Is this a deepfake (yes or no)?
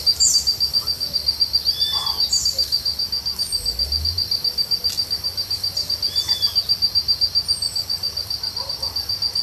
no